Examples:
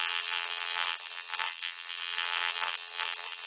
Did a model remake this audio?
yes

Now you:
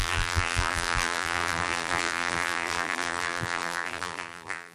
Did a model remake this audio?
yes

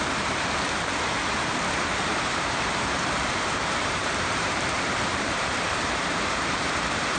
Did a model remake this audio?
yes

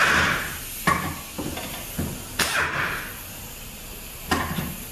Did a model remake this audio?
no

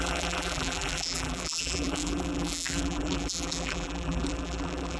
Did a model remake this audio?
yes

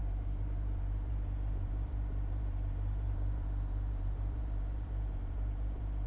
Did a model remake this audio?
yes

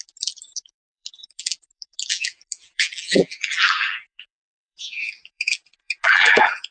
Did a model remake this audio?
yes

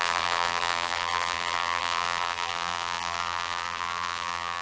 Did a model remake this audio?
yes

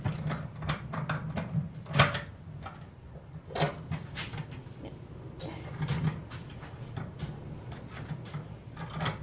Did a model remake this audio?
no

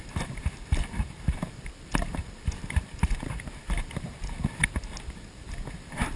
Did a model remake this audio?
no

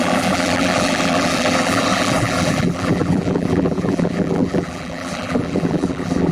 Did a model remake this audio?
yes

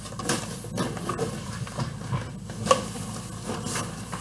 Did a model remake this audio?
no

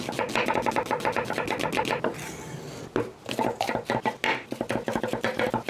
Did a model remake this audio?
no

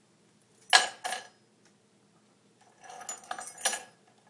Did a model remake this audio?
no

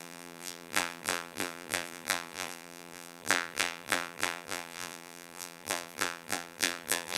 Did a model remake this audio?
yes